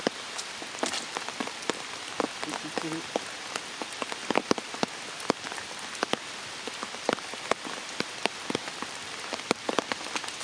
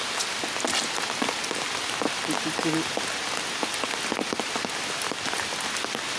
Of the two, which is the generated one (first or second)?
first